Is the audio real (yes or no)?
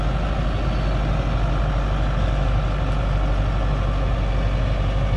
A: yes